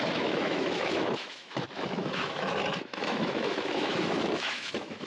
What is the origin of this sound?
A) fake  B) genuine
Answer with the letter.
A